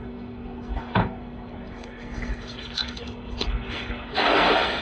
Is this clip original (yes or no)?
no